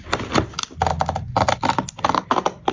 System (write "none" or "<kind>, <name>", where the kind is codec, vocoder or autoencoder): none